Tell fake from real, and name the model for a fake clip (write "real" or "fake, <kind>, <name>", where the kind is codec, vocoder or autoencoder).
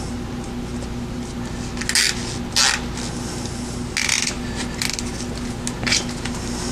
real